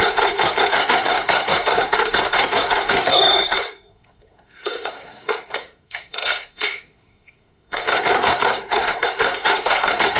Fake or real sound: fake